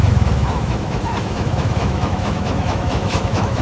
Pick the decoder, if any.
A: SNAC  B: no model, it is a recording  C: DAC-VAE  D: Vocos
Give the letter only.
C